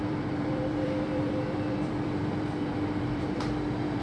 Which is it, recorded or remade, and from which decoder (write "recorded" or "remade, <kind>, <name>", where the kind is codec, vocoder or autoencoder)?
remade, vocoder, BigVGAN v2